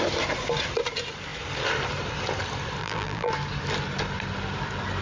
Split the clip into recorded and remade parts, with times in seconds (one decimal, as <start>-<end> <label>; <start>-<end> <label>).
0.0-2.8 recorded; 2.8-3.3 remade; 3.3-5.0 recorded